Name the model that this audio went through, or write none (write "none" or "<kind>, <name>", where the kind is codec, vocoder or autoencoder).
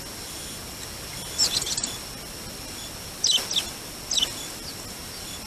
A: none